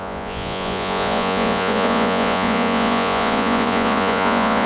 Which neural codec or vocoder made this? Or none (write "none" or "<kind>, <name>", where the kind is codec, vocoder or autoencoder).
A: vocoder, Vocos